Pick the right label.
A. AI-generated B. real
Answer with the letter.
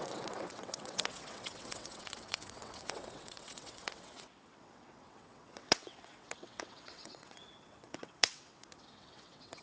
A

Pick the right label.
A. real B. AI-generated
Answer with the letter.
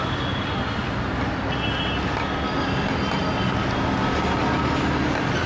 A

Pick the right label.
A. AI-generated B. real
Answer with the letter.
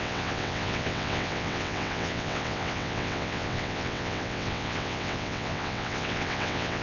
A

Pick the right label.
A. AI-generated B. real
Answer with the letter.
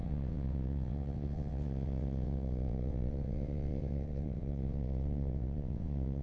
A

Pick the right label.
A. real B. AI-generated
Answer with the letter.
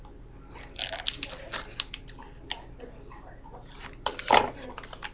A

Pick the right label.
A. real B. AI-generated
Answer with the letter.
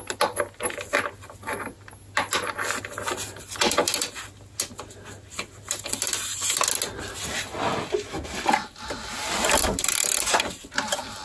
A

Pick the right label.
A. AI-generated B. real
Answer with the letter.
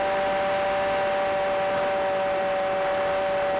B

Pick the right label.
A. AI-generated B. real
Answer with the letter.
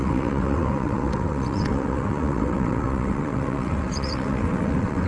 A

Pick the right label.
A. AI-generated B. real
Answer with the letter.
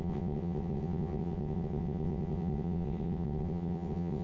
A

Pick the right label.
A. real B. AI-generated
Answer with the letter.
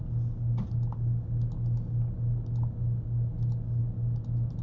A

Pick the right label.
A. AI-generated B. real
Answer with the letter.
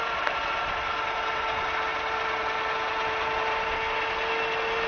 B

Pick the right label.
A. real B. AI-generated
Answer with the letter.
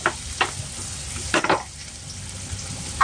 A